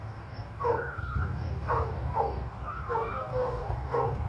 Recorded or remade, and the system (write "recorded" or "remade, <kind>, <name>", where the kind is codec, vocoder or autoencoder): remade, codec, DAC